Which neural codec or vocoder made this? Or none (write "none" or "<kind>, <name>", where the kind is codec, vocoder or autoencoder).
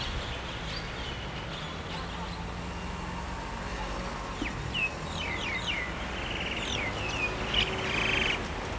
none